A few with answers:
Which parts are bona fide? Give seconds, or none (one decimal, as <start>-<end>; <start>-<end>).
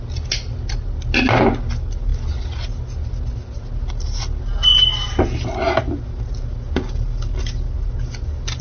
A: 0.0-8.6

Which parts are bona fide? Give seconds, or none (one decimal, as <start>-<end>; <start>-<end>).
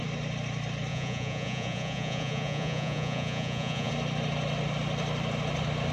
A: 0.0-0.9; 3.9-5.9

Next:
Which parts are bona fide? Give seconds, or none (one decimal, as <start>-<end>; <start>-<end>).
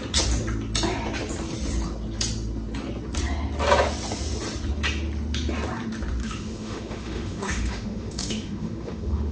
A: 0.0-6.2